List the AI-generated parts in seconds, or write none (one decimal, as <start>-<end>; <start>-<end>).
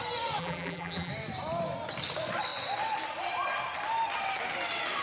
0.4-1.1